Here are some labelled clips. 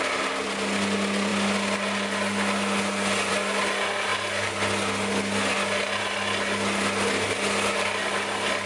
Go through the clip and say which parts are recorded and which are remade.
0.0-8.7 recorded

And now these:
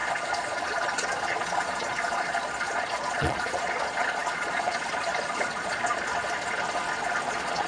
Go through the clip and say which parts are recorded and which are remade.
0.0-6.1 remade; 6.1-7.3 recorded; 7.3-7.7 remade